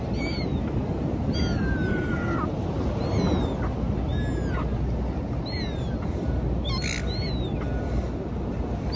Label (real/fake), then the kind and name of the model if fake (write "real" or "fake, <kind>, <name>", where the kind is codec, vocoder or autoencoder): real